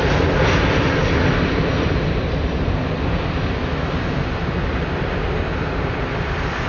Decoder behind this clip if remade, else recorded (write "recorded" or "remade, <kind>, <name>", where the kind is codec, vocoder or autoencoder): recorded